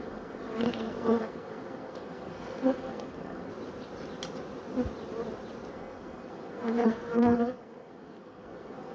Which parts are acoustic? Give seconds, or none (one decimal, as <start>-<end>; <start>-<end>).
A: 3.5-5.7